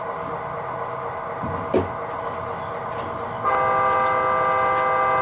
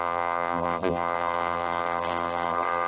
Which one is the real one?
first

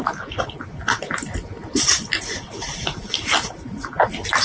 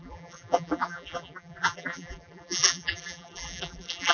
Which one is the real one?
first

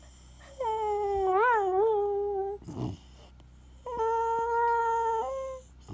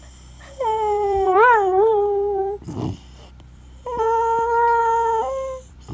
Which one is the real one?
first